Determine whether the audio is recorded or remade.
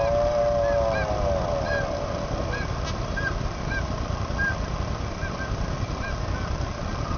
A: recorded